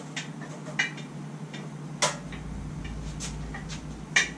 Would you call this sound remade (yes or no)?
no